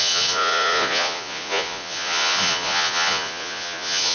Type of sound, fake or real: fake